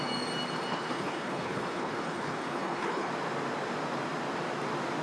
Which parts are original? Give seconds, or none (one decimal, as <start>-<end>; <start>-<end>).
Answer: 0.0-0.7; 3.1-5.0